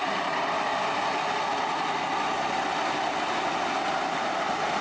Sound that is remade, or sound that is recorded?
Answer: recorded